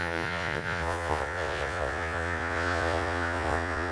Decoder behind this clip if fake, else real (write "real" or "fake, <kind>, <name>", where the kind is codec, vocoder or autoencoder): fake, vocoder, Vocos